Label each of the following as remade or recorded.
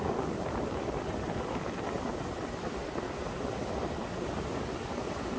recorded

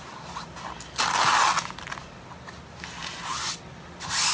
recorded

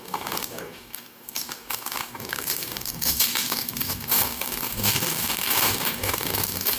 remade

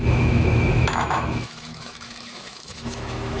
remade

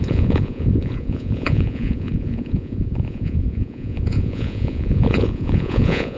remade